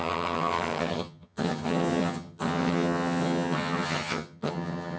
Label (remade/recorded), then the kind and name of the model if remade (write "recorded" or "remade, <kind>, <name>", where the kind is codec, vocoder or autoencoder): remade, vocoder, HiFi-GAN